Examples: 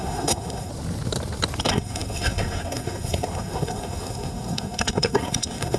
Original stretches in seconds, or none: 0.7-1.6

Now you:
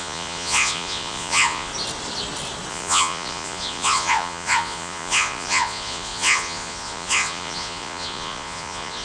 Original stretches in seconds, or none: 1.7-2.7

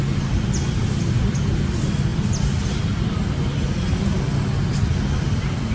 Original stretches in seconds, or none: 0.0-5.7